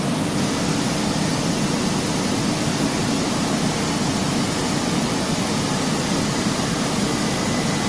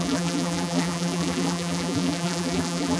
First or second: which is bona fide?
first